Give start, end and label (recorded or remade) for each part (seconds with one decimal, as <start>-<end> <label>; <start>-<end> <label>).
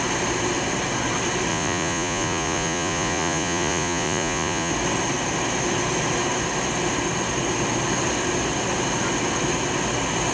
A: 0.0-1.5 recorded; 1.5-4.7 remade; 4.7-10.3 recorded